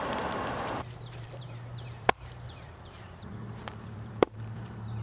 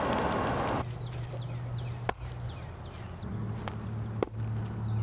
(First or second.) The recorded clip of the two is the second